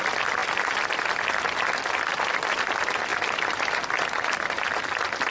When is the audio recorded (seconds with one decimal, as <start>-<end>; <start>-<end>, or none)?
0.0-5.3